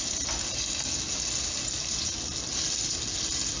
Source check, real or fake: real